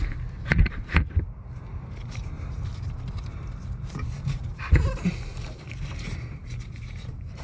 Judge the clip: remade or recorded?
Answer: remade